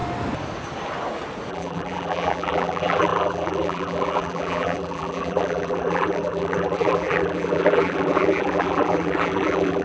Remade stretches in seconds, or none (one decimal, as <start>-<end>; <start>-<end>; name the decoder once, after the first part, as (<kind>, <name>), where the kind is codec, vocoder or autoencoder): 1.5-9.8 (vocoder, BigVGAN v2)